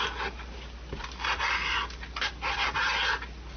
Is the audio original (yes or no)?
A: yes